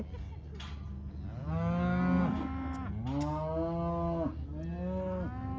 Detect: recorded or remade recorded